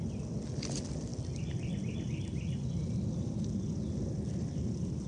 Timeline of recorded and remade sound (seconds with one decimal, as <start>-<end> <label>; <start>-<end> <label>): 0.0-5.1 recorded